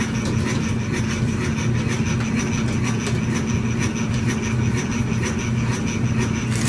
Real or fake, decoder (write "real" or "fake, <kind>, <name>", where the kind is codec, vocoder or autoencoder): real